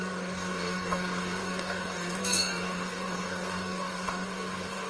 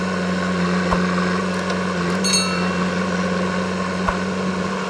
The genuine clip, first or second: second